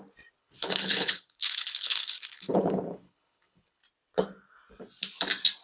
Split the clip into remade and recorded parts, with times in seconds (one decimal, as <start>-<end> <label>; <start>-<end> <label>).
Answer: 0.0-0.4 recorded; 0.4-3.8 remade; 3.8-5.6 recorded